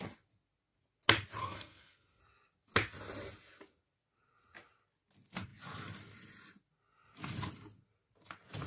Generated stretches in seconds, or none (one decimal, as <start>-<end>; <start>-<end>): 1.4-2.2

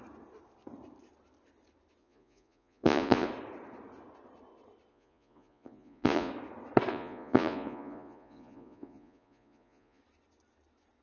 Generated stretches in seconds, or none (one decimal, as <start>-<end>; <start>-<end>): 2.0-3.3; 4.9-6.3; 6.9-10.0

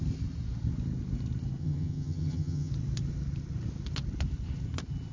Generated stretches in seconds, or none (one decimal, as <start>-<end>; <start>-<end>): 1.6-2.7

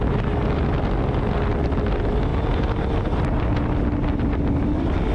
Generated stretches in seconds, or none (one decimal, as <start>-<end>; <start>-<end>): none

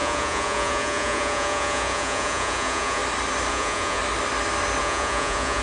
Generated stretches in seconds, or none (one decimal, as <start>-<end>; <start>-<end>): 0.0-3.0; 3.5-4.0; 4.8-5.6

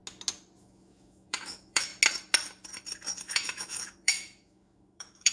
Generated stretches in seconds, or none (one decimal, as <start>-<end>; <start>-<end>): 0.6-1.9; 3.2-5.3